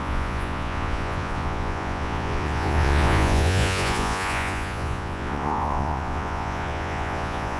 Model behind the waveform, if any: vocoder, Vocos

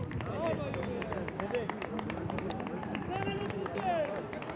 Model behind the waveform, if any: none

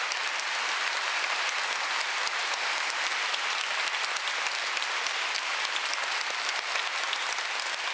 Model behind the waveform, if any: none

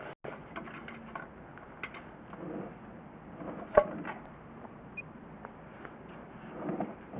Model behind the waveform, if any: none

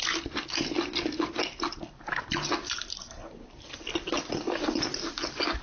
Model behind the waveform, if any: none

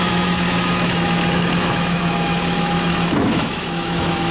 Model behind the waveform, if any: autoencoder, DAC-VAE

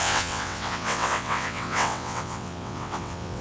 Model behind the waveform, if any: vocoder, WaveNeXt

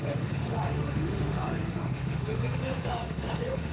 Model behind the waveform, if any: autoencoder, DAC-VAE